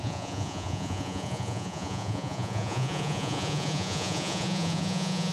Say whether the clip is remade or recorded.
remade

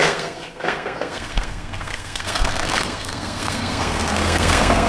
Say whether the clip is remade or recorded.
remade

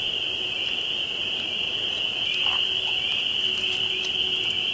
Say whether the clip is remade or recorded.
recorded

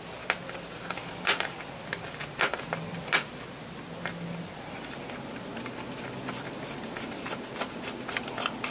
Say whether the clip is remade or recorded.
recorded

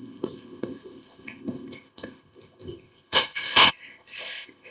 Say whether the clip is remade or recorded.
remade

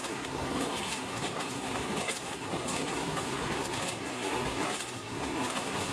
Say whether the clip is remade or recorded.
remade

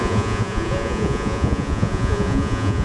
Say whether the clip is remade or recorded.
remade